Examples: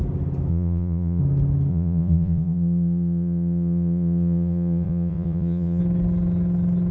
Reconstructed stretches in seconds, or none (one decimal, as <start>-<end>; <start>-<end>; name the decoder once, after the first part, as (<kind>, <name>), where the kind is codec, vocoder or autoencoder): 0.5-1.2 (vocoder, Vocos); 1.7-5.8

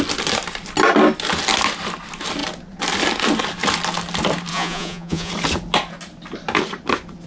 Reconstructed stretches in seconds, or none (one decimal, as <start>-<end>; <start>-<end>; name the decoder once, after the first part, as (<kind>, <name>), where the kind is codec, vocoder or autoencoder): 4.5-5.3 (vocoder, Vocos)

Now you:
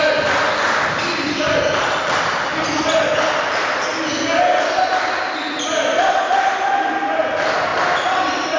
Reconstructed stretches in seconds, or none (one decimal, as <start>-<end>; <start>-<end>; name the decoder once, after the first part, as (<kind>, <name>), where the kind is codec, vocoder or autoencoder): none